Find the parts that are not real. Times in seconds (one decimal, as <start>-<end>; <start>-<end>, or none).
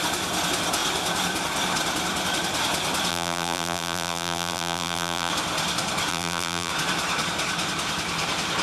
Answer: 3.1-5.3; 6.1-6.7